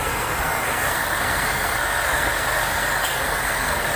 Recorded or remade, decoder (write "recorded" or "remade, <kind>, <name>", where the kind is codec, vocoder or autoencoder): remade, codec, SNAC